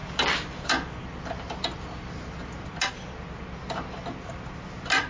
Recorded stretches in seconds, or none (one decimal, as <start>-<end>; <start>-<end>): 0.0-5.1